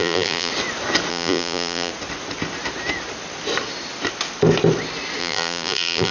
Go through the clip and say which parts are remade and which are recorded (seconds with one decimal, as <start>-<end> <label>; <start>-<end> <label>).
0.0-0.5 remade; 0.5-1.1 recorded; 1.1-1.9 remade; 1.9-5.2 recorded; 5.2-6.1 remade